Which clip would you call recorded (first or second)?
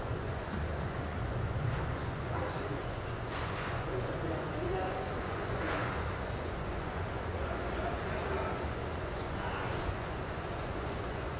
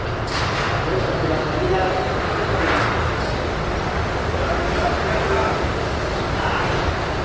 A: second